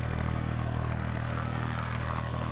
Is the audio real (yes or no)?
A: no